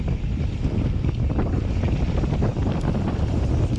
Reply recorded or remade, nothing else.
recorded